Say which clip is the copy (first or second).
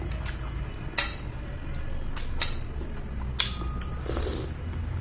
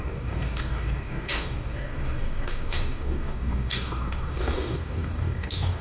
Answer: second